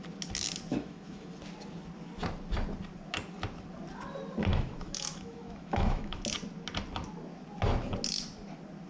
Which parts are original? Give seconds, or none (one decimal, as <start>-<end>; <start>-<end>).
0.0-0.7; 1.3-4.5; 6.2-8.9